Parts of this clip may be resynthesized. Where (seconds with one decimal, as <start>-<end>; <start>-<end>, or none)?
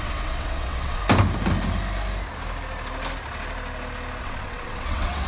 0.0-1.0; 4.2-5.3